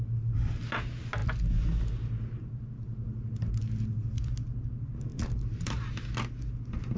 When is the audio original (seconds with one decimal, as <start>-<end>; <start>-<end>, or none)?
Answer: 0.0-5.1; 5.8-7.0